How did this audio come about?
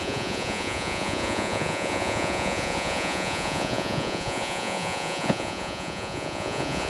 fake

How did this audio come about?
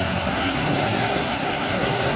fake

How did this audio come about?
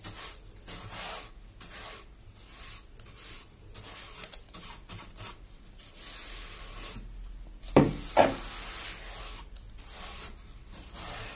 real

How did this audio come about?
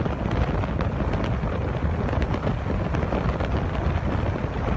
real